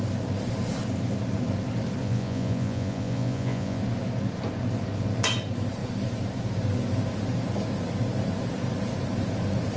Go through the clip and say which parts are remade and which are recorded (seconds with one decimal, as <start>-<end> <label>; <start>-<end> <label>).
0.0-2.0 recorded; 2.0-3.8 remade; 3.8-9.8 recorded